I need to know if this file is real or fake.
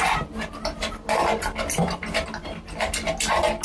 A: real